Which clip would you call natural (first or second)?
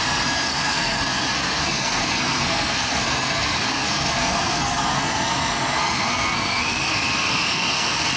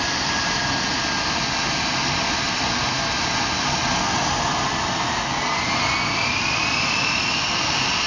second